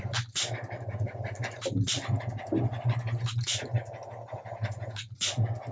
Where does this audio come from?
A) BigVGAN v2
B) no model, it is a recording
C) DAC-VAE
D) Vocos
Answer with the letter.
B